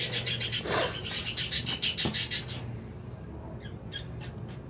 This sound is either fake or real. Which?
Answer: real